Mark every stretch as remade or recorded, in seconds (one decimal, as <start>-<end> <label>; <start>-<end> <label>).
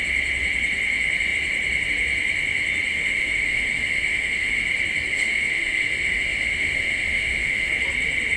0.0-2.9 recorded; 2.9-4.6 remade; 4.6-5.1 recorded; 5.1-7.7 remade; 7.7-8.4 recorded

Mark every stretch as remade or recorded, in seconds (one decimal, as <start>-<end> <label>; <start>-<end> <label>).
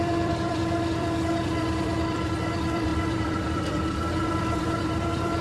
0.0-5.4 remade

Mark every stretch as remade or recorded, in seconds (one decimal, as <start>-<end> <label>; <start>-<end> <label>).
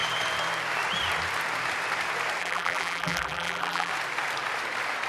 0.0-2.4 recorded; 2.4-3.9 remade; 3.9-5.1 recorded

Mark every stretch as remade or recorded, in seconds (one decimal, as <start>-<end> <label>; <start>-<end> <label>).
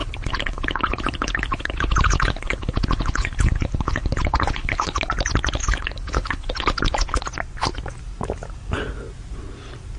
0.0-5.0 remade; 5.0-5.6 recorded; 5.6-7.2 remade; 7.2-10.0 recorded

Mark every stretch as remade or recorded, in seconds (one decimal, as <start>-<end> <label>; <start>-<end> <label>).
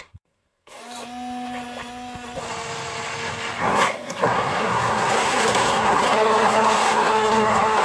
0.0-0.8 remade; 0.8-3.6 recorded; 3.6-7.8 remade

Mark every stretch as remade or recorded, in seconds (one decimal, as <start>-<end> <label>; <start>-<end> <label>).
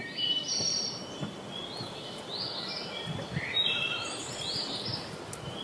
0.0-5.6 recorded